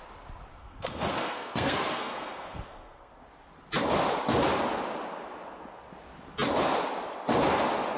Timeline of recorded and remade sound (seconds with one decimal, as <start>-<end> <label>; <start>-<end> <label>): 0.0-0.5 recorded; 0.5-3.1 remade; 3.1-8.0 recorded